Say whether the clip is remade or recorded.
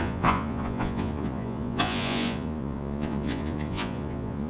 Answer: remade